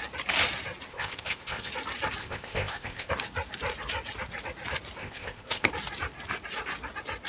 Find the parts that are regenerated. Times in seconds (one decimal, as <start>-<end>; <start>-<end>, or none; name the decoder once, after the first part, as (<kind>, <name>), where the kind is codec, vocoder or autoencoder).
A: 0.9-1.7 (codec, ZipCodec); 2.2-3.1; 5.0-5.7